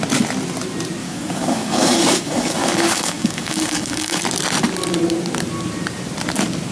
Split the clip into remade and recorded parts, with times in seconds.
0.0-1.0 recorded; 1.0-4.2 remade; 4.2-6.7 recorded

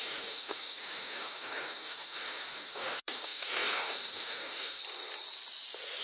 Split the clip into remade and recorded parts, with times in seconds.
0.0-4.8 remade; 4.8-6.0 recorded

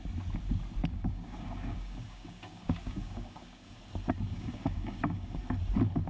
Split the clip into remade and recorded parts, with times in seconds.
0.0-0.8 recorded; 0.8-3.8 remade; 3.8-4.3 recorded; 4.3-5.4 remade; 5.4-6.1 recorded

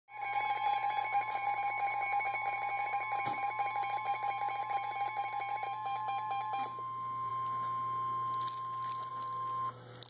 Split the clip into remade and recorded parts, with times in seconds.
0.0-10.1 recorded

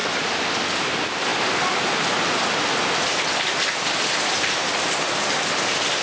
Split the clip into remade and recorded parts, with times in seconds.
0.0-6.0 recorded